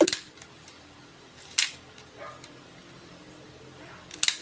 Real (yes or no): yes